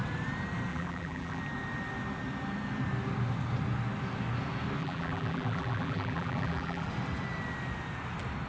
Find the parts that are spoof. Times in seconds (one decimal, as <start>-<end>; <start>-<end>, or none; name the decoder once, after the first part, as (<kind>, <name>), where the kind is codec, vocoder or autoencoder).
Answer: 0.7-1.4 (vocoder, BigVGAN v2); 4.8-6.9